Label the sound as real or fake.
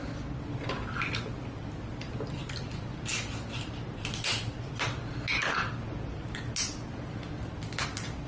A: real